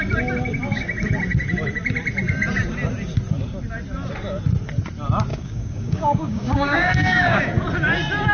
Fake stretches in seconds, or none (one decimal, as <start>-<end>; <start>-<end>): 5.3-7.4